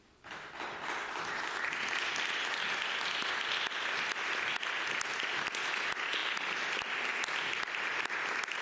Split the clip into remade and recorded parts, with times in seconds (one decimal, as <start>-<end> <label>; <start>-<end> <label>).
0.0-8.6 recorded